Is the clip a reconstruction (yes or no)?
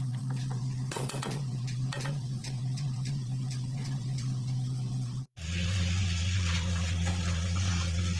yes